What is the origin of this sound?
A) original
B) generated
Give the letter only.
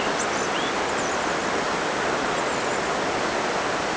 A